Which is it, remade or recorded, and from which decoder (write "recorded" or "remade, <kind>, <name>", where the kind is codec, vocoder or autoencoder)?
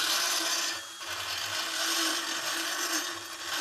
recorded